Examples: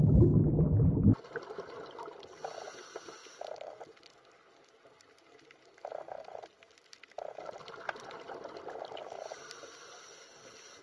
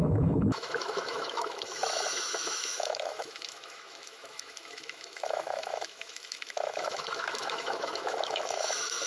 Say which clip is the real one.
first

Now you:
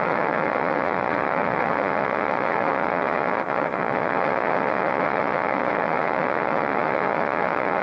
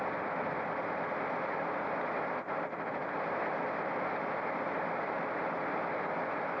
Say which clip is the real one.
second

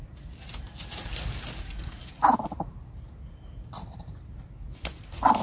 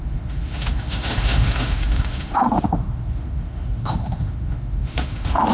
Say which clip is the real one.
first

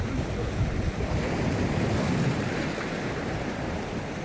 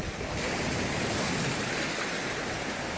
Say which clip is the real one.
second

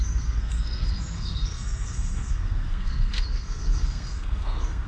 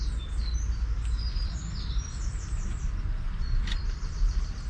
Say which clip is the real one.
second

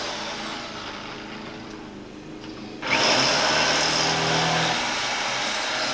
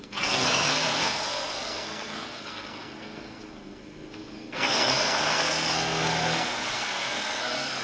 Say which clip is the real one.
first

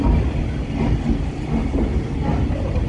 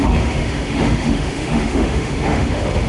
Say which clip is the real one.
first